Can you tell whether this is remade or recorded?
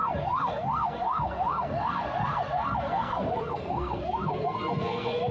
remade